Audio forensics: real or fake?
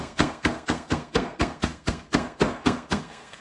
fake